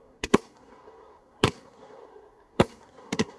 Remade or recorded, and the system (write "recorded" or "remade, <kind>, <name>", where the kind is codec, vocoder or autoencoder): remade, codec, SNAC